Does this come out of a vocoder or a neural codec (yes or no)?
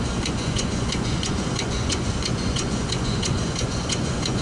yes